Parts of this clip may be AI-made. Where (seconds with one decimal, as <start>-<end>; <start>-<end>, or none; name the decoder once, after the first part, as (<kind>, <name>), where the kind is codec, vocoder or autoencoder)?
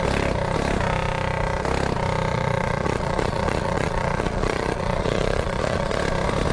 2.3-6.0 (vocoder, Vocos)